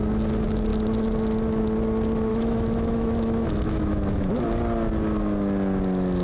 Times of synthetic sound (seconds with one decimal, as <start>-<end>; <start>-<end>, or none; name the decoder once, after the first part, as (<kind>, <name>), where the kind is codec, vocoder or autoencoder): 2.3-4.4 (autoencoder, DAC-VAE)